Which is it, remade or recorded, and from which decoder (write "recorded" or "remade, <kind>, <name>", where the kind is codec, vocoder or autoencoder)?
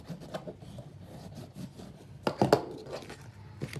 recorded